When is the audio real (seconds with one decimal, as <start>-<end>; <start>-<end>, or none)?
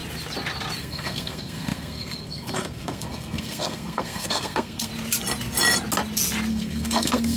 0.0-0.8; 4.9-6.5